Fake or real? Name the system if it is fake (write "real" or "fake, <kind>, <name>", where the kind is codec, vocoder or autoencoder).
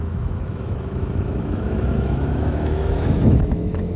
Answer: fake, autoencoder, DAC-VAE